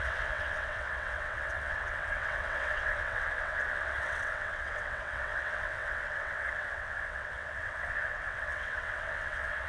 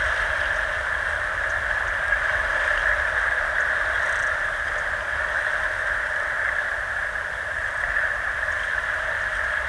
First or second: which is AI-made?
first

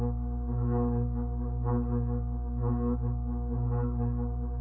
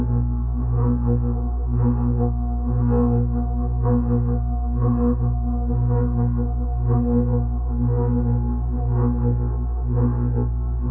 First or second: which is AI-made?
second